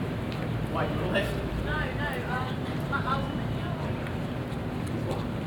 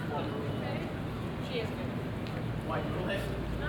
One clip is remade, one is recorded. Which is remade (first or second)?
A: first